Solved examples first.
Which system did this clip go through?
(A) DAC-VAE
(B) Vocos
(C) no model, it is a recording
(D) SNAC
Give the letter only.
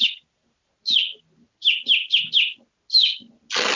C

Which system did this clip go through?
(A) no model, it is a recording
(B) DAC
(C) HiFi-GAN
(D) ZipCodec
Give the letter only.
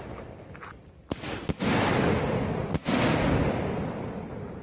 A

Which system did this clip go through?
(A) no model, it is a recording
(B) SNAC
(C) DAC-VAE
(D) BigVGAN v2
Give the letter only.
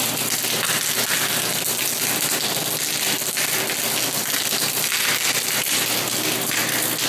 A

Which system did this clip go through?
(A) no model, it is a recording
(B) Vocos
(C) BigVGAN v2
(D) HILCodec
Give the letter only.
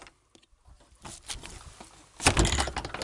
A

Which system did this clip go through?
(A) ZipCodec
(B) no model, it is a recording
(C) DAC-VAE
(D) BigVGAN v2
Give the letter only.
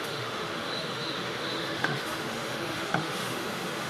C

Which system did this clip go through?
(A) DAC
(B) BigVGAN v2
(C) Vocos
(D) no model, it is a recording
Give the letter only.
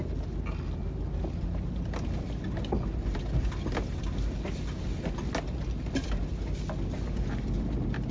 D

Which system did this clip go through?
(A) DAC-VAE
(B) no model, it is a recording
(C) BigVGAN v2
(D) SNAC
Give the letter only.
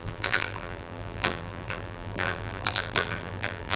C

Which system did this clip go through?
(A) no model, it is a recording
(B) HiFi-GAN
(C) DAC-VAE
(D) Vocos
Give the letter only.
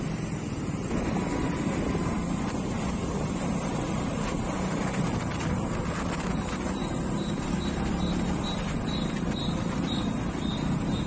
A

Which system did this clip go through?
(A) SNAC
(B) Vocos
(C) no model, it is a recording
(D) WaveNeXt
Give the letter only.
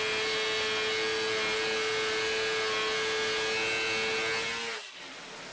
C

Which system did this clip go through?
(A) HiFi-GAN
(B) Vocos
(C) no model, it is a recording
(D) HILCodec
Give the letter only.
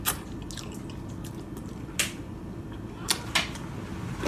C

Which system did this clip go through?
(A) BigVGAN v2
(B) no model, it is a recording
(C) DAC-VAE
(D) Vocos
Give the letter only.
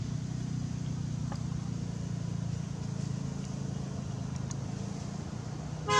B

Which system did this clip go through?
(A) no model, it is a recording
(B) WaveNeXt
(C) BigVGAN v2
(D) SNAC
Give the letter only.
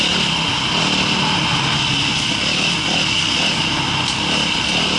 A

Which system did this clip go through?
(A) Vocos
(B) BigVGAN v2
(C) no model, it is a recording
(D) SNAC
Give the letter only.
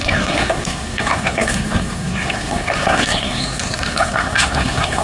D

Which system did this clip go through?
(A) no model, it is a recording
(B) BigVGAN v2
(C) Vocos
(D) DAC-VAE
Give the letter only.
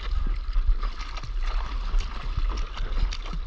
A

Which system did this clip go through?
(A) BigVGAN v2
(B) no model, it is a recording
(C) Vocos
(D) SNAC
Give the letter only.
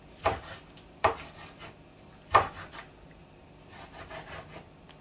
B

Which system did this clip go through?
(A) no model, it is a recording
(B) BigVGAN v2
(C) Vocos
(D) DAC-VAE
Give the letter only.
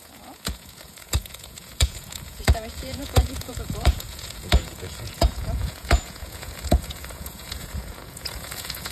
C